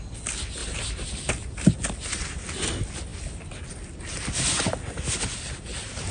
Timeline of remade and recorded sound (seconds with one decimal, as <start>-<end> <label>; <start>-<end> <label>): 0.0-6.1 recorded